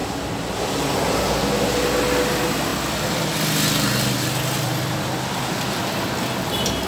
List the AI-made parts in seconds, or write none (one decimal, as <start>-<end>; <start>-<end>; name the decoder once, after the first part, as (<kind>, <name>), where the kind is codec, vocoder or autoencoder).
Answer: none